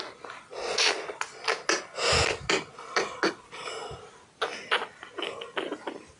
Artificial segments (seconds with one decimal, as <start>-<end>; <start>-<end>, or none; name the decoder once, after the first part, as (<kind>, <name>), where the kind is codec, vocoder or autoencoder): none